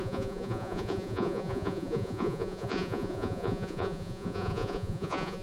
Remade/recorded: remade